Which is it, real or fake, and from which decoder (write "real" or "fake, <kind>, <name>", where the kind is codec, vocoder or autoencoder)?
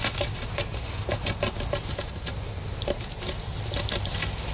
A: real